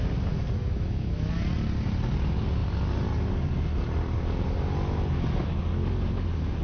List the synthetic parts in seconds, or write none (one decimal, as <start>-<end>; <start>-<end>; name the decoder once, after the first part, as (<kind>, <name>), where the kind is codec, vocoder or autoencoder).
0.6-1.3 (autoencoder, DAC-VAE)